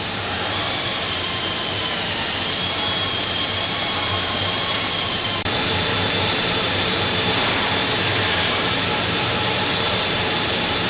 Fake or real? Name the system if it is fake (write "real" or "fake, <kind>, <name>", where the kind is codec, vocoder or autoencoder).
fake, vocoder, BigVGAN v2